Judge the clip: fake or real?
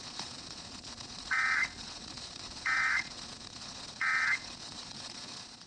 fake